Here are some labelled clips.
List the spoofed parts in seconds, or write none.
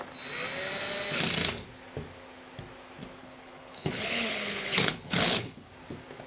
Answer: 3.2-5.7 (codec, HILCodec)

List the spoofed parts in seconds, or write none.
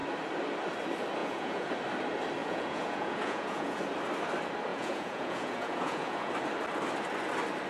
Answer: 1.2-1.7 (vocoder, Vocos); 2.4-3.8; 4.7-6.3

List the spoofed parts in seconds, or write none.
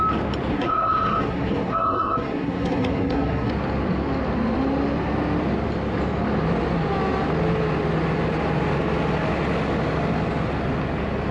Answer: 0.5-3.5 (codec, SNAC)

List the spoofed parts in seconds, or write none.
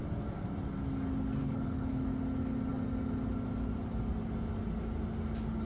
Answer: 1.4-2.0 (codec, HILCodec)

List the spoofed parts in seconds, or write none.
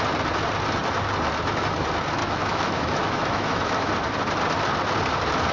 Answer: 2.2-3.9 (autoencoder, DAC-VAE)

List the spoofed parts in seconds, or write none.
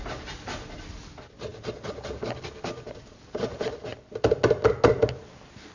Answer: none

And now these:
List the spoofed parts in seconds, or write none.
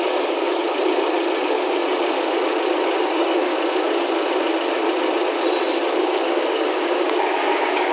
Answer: 0.0-0.6 (codec, DAC); 1.4-1.8; 3.0-3.5; 5.9-7.9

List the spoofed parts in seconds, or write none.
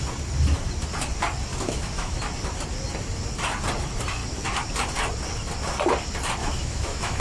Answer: 1.5-2.2 (autoencoder, DAC-VAE); 6.4-7.2